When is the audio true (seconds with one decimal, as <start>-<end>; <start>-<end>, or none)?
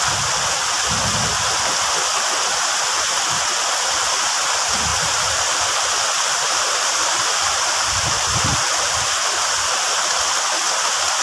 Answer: 0.0-4.9; 5.6-6.3; 9.0-11.2